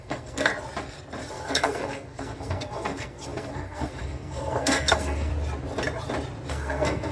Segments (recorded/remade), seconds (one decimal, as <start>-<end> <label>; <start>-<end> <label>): 0.0-0.5 remade; 0.5-1.3 recorded; 1.3-5.3 remade; 5.3-6.5 recorded; 6.5-7.1 remade